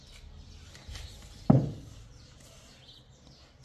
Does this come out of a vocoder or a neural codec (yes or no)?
no